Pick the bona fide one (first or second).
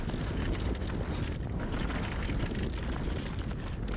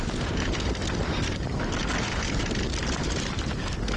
first